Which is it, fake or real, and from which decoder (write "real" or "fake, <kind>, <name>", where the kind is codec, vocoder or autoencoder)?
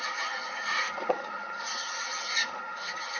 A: fake, vocoder, HiFi-GAN